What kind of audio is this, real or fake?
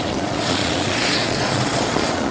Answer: fake